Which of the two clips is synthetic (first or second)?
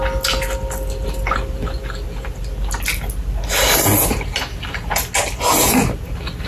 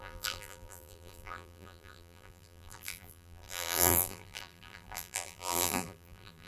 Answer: second